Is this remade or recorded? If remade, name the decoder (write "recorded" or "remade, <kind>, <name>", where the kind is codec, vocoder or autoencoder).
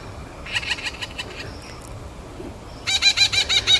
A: recorded